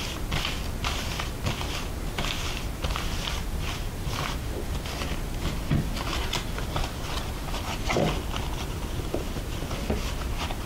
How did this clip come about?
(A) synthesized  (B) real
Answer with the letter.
B